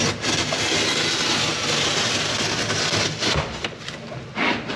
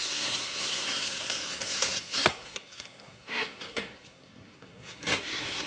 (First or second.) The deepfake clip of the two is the second